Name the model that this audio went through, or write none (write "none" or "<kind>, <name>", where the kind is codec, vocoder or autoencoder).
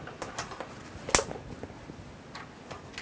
none